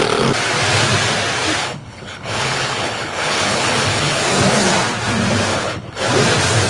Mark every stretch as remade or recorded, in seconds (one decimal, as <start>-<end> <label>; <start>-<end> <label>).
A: 0.0-1.6 recorded; 1.6-4.2 remade; 4.2-5.5 recorded; 5.5-6.1 remade; 6.1-6.7 recorded